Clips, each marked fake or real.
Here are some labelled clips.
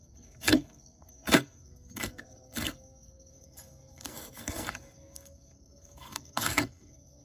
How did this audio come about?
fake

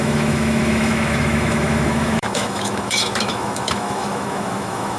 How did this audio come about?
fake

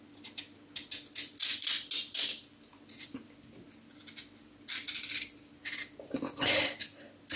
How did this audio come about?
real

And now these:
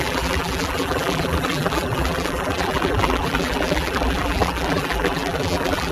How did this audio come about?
fake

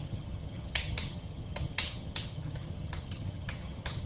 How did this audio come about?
fake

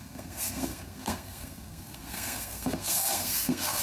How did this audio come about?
fake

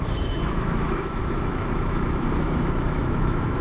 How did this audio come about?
fake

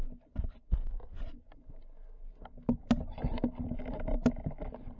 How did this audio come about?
real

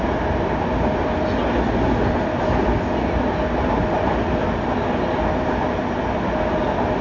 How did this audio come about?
real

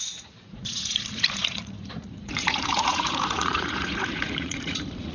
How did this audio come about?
fake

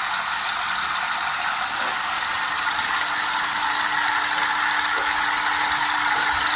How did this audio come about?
real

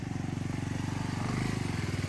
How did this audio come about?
real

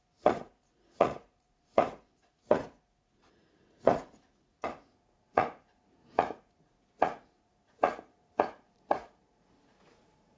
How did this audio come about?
fake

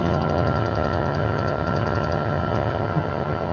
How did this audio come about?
fake